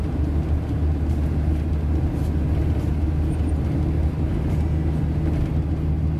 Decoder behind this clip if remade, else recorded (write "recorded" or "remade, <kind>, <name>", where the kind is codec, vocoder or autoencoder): recorded